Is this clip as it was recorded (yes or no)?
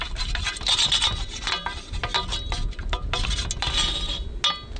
yes